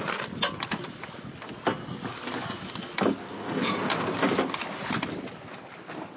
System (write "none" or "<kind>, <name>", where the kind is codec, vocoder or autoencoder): none